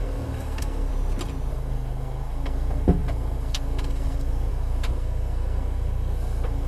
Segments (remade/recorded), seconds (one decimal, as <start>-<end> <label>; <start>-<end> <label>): 0.0-0.9 remade; 0.9-1.5 recorded; 1.5-6.7 remade